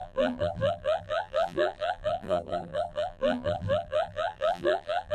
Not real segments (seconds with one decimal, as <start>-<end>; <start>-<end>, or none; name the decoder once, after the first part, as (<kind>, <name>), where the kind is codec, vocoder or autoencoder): 0.0-5.1 (vocoder, BigVGAN v2)